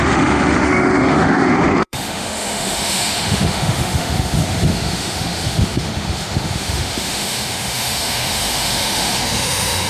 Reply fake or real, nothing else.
fake